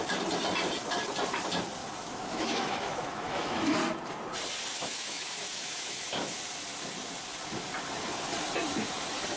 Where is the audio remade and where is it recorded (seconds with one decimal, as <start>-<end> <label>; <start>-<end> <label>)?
0.0-1.8 recorded; 1.8-3.8 remade; 3.8-4.7 recorded; 4.7-6.4 remade; 6.4-9.4 recorded